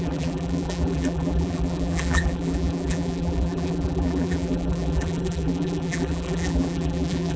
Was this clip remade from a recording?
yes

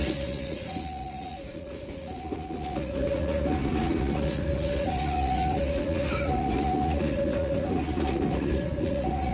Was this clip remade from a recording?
yes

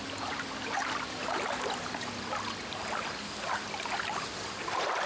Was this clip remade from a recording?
no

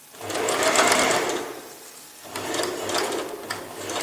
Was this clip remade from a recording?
no